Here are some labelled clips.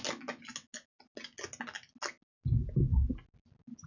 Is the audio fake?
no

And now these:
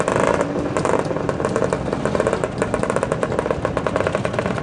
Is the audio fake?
no